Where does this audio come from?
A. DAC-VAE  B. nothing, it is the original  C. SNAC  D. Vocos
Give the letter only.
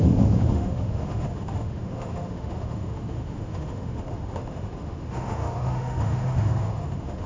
A